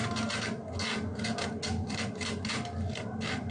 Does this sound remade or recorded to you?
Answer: recorded